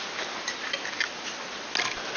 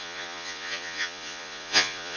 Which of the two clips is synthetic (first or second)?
second